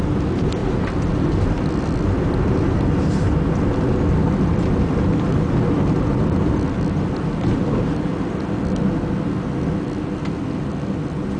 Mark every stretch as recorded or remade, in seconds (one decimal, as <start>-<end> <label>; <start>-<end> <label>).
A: 0.0-11.4 recorded